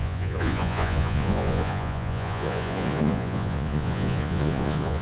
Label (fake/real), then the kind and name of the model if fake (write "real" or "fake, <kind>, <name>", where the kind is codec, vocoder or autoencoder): fake, vocoder, Vocos